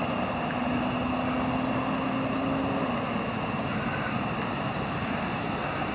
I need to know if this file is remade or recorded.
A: recorded